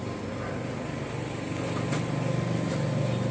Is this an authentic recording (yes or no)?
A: yes